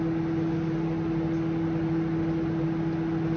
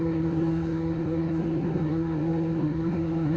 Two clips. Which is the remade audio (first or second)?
second